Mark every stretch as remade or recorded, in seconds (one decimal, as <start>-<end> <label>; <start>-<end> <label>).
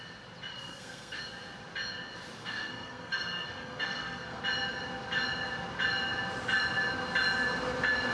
0.0-0.5 recorded; 0.5-1.2 remade; 1.2-2.4 recorded; 2.4-4.4 remade; 4.4-8.1 recorded